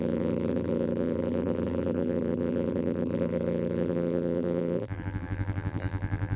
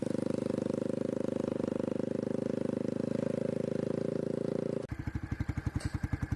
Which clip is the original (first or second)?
second